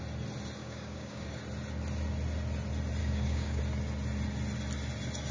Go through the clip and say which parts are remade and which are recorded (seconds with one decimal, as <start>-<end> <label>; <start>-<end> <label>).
0.0-0.6 recorded; 0.6-1.4 remade; 1.4-3.0 recorded; 3.0-3.6 remade; 3.6-5.3 recorded